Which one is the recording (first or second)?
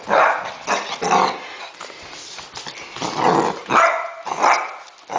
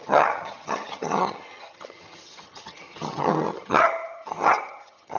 first